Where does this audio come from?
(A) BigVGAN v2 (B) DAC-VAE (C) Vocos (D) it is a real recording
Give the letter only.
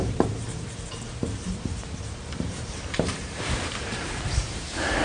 A